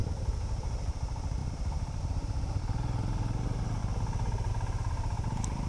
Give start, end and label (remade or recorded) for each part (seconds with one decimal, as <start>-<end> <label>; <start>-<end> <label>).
0.0-0.6 remade; 0.6-1.4 recorded; 1.4-2.6 remade; 2.6-5.7 recorded